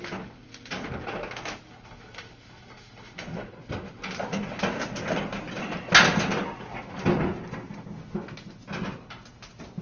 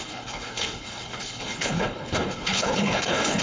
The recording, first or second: first